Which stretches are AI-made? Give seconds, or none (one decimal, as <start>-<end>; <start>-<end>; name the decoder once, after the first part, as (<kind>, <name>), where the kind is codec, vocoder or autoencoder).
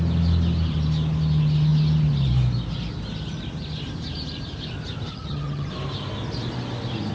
5.1-5.7 (vocoder, HiFi-GAN)